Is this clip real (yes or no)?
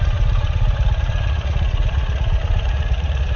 no